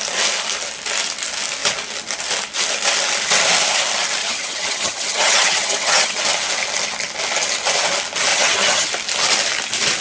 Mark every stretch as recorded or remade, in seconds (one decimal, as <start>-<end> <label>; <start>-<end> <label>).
0.0-4.2 recorded; 4.2-6.2 remade; 6.2-8.3 recorded; 8.3-8.9 remade; 8.9-10.0 recorded